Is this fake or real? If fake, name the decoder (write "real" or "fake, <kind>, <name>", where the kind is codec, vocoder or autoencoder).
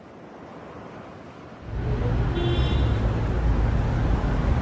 real